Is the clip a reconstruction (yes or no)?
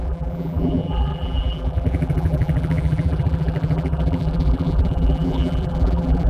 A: yes